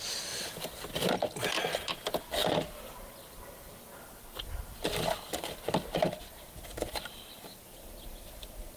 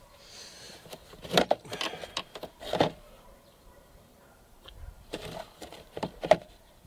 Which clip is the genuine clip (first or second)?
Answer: first